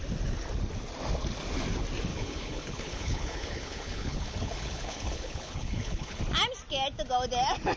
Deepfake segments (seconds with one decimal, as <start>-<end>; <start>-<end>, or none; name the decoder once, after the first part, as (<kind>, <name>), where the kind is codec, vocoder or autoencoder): 2.1-6.2 (codec, HILCodec)